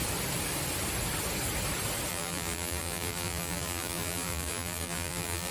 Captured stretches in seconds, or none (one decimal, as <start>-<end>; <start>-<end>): 0.0-2.1